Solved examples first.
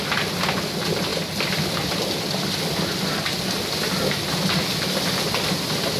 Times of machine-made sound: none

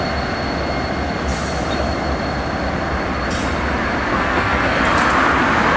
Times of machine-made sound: 4.1-4.8 (codec, SNAC)

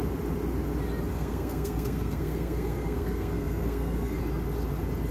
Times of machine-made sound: 1.1-4.2 (codec, SNAC)

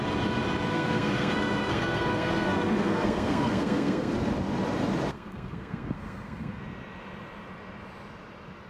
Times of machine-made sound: 0.7-4.1 (codec, SNAC); 5.1-6.6

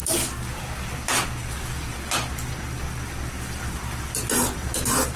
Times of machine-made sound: none

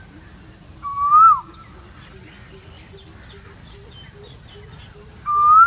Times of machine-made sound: none

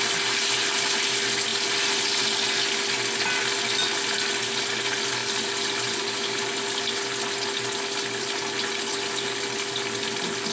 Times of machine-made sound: none